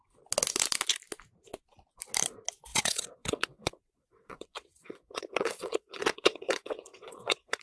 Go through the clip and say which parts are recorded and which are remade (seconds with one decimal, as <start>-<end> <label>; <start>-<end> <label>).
0.0-2.7 recorded; 2.7-7.6 remade

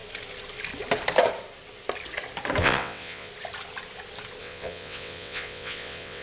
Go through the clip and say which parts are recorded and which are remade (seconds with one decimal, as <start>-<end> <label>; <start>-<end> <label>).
0.0-2.6 recorded; 2.6-3.3 remade; 3.3-4.4 recorded; 4.4-6.2 remade